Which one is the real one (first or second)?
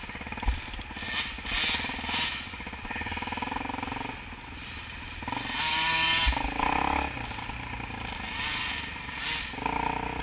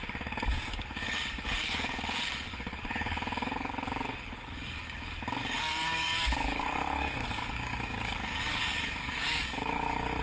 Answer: first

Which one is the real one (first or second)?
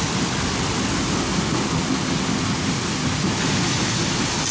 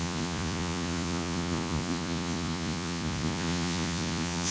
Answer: first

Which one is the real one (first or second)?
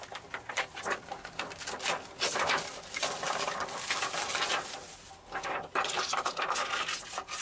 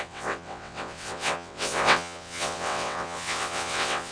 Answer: first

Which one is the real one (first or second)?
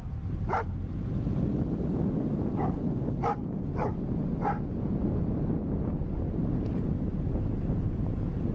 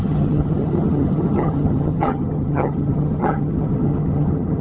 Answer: first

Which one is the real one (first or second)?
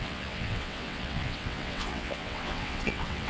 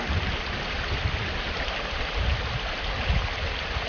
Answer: second